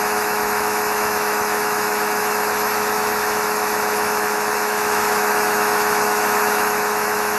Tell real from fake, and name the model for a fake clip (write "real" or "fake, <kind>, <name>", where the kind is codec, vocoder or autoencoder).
fake, autoencoder, DAC-VAE